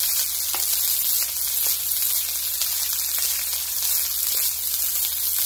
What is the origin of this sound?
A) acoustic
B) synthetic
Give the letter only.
A